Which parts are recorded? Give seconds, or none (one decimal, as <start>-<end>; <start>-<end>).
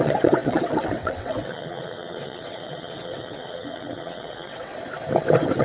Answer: 4.7-5.6